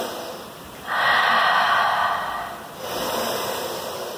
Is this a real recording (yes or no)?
yes